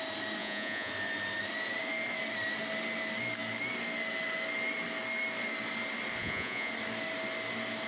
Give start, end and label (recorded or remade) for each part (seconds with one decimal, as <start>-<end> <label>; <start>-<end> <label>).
0.0-0.4 recorded; 0.4-0.9 remade; 0.9-6.2 recorded; 6.2-6.7 remade; 6.7-7.9 recorded